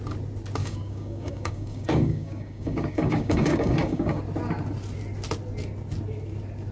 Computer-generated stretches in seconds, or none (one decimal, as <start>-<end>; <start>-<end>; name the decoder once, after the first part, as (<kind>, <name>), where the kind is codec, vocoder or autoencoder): 0.6-4.2 (codec, DAC)